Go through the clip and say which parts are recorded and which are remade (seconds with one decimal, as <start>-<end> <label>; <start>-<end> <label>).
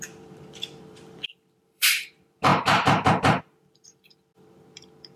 0.0-5.2 remade